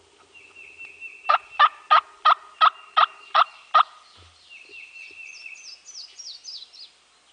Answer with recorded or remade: recorded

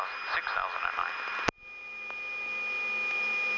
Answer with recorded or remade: recorded